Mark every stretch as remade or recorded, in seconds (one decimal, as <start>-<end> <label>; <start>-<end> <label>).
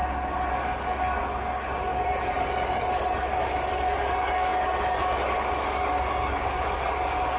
0.0-0.5 recorded; 0.5-7.4 remade